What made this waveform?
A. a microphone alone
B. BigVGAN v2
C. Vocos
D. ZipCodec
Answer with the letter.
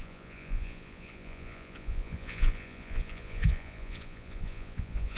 C